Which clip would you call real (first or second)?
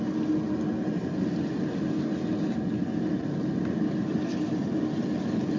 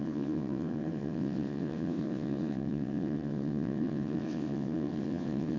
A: first